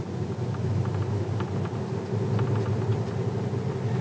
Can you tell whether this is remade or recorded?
recorded